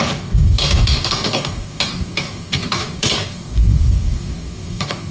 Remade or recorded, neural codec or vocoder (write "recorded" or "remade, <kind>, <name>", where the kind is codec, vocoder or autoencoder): remade, codec, DAC